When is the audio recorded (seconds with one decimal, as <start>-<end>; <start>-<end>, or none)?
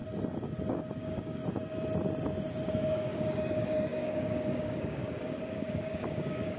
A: 0.0-0.7; 1.4-2.7